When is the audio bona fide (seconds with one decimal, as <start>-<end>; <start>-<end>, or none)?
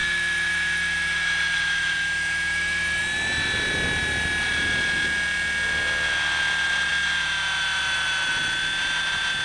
3.0-9.4